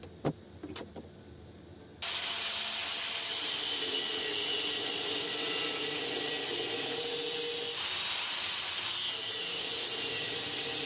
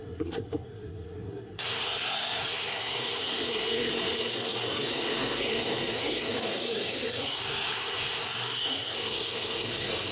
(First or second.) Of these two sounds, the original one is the first